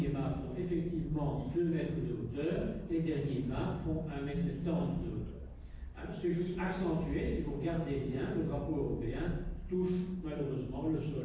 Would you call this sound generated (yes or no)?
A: no